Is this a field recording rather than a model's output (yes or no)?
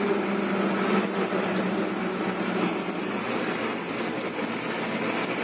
yes